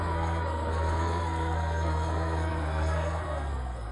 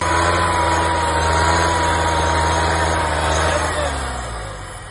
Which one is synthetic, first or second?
first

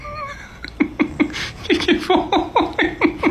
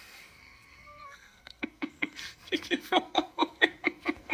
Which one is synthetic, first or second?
second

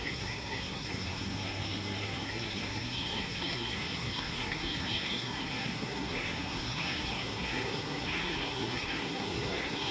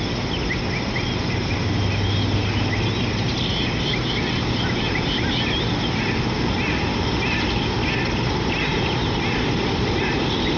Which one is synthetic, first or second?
first